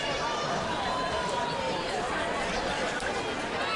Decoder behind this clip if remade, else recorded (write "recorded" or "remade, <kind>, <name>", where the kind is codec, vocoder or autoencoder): recorded